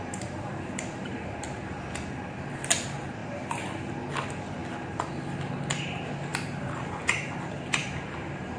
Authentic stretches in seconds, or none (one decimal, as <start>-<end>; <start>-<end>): 0.0-3.2; 3.9-4.6; 5.5-6.3; 7.0-8.6